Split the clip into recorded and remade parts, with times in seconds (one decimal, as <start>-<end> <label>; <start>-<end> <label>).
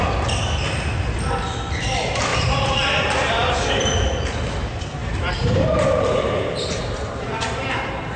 0.0-2.3 recorded; 2.3-3.9 remade; 3.9-5.0 recorded; 5.0-8.2 remade